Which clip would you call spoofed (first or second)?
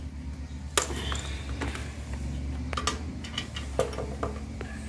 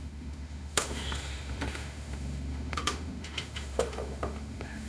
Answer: second